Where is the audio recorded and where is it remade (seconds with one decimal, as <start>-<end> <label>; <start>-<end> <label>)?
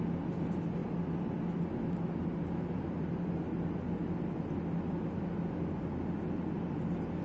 0.0-7.2 recorded